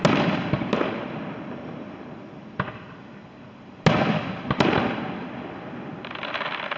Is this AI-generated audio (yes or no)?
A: no